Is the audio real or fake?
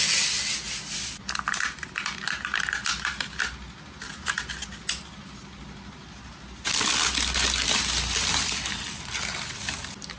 real